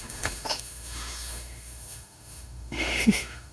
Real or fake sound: fake